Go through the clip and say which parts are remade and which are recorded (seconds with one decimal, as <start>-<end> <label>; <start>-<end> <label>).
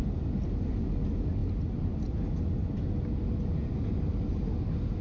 0.0-5.0 recorded